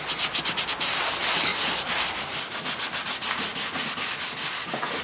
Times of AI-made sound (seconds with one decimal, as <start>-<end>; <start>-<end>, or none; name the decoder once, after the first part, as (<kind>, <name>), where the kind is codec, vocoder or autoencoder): 1.5-2.1 (vocoder, BigVGAN v2)